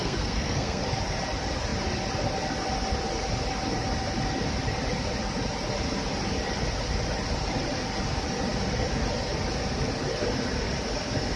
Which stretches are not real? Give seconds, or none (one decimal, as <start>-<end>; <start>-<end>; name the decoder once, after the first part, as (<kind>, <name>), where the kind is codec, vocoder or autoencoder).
0.0-0.8 (codec, SNAC)